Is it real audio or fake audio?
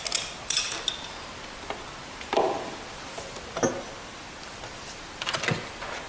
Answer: real